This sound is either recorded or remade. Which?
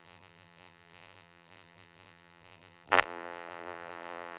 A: remade